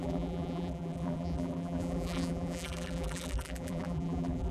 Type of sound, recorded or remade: remade